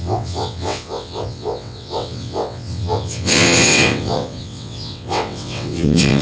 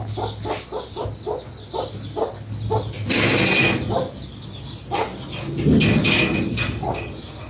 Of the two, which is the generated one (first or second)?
first